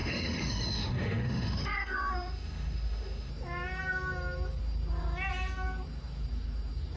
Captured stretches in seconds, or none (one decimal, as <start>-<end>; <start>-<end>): 3.3-7.0